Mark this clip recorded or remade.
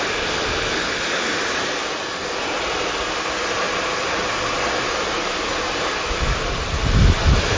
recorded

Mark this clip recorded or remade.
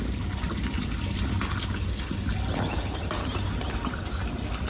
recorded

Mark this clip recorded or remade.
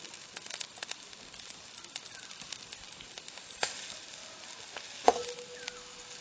recorded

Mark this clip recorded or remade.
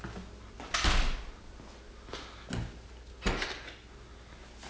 recorded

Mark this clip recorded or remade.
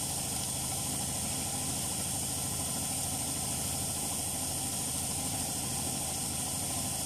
recorded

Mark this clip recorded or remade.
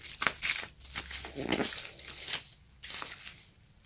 recorded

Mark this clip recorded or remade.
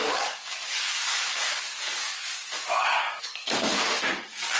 remade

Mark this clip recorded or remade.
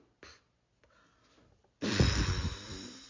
recorded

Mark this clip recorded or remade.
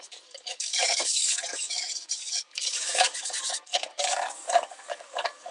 remade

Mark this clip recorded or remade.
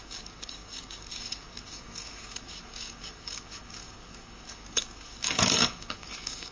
remade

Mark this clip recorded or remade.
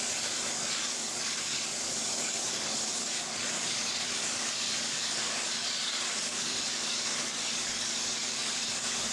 remade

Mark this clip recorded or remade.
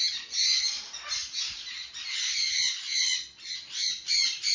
recorded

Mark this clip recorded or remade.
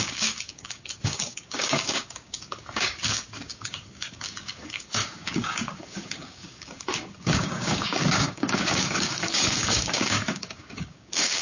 remade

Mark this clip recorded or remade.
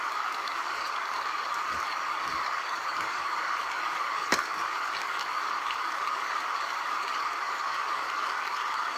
remade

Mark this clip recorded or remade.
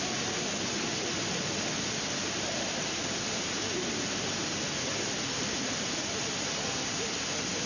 recorded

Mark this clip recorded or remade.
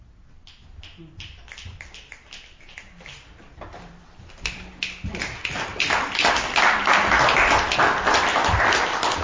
recorded